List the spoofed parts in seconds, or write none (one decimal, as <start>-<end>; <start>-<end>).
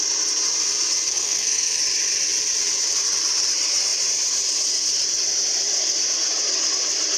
1.1-1.8